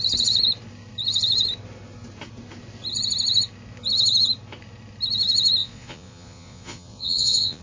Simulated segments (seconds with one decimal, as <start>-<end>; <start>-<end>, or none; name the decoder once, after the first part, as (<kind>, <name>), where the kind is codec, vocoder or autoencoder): 5.6-7.6 (vocoder, Vocos)